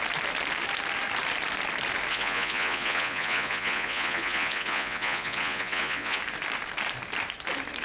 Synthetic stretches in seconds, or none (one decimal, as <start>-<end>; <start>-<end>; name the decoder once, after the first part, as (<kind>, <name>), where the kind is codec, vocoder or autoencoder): 2.1-6.2 (vocoder, Vocos)